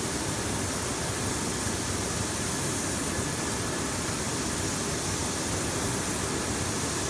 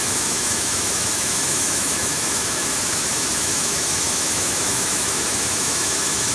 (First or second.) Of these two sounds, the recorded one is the first